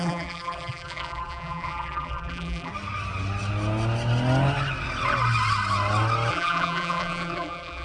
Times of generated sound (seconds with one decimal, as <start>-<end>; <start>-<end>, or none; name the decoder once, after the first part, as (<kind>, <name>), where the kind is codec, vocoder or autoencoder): 0.0-2.7 (vocoder, BigVGAN v2); 6.3-7.8

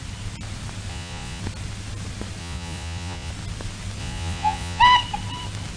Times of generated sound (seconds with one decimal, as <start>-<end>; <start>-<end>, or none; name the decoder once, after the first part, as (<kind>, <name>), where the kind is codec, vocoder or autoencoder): 0.9-1.4 (vocoder, Vocos); 2.4-3.3; 4.0-4.8

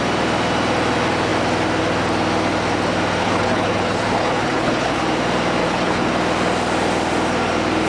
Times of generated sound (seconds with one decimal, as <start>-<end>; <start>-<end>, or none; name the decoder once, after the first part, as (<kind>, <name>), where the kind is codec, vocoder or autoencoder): 3.2-5.0 (codec, HILCodec); 5.6-6.1